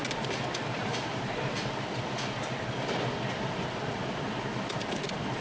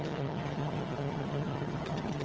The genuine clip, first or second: first